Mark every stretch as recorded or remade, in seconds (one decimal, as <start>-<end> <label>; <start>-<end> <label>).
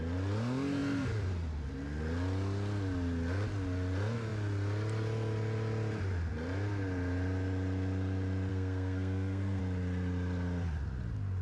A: 0.0-8.5 recorded; 8.5-9.6 remade; 9.6-11.4 recorded